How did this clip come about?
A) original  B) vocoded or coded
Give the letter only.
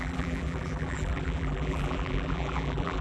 B